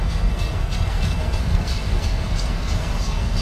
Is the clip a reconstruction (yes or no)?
yes